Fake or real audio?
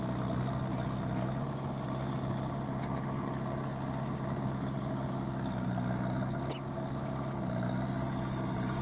real